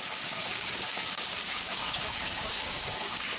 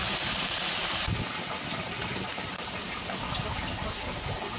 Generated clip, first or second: first